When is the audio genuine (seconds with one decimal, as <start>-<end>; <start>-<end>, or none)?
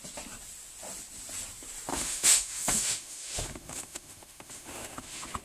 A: 0.0-1.9